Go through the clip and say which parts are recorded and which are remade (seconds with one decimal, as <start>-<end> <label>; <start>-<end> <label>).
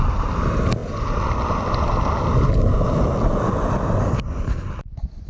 0.0-5.3 recorded